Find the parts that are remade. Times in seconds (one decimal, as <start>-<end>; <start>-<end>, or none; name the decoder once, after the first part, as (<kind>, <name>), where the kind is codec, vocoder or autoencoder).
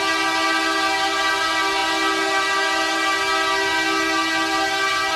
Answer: none